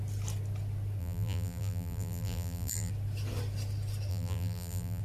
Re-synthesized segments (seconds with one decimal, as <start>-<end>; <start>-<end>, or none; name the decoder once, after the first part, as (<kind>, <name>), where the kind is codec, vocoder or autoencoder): 1.0-2.9 (vocoder, BigVGAN v2); 4.1-5.0